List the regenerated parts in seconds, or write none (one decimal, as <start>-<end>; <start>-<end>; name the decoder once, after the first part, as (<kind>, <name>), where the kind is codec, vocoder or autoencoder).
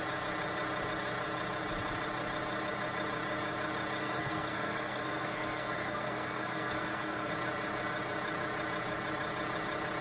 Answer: 4.0-7.3 (codec, SNAC)